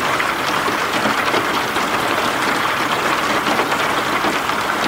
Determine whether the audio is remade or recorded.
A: recorded